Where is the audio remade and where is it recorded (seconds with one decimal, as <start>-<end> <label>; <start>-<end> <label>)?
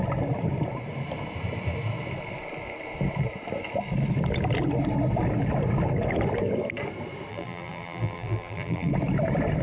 0.0-7.3 recorded; 7.3-8.9 remade; 8.9-9.6 recorded